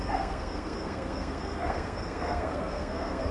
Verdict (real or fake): fake